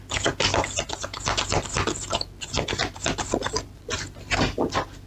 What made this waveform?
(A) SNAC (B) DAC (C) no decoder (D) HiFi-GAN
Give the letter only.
C